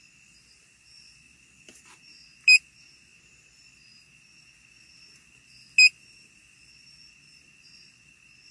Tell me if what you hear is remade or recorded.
recorded